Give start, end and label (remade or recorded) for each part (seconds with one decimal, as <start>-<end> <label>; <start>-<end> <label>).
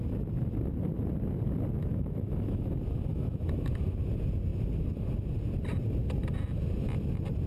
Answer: 0.0-1.8 recorded; 1.8-2.7 remade; 2.7-3.1 recorded; 3.1-3.7 remade; 3.7-7.5 recorded